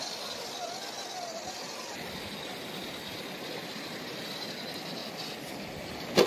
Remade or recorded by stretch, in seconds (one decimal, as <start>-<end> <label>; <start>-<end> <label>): 0.0-6.3 recorded